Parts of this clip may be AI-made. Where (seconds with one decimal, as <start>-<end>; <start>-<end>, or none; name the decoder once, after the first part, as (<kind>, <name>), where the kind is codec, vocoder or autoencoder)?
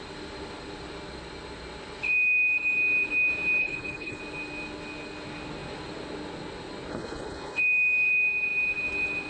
3.6-4.2 (codec, HILCodec); 6.9-7.6